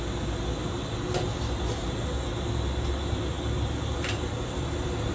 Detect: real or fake real